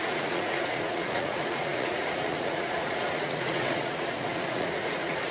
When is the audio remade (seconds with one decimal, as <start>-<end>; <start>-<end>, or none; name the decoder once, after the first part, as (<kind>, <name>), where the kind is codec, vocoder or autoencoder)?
0.0-5.3 (vocoder, Vocos)